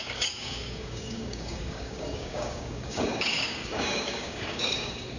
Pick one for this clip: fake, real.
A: fake